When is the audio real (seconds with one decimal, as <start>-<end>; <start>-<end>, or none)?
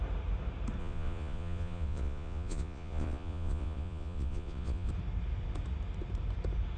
0.0-0.8; 4.9-6.8